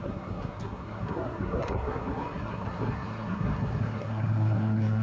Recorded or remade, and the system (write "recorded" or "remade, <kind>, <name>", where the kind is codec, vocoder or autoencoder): remade, codec, SNAC